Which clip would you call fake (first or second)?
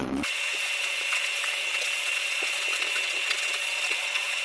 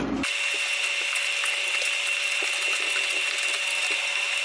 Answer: first